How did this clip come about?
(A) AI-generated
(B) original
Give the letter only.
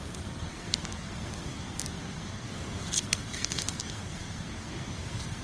A